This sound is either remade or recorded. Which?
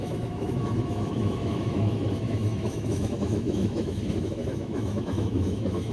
remade